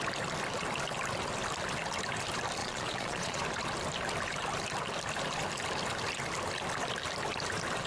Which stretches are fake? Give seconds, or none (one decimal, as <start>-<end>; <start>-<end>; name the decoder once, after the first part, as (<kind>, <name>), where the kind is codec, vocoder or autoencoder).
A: 2.6-3.4 (vocoder, Vocos)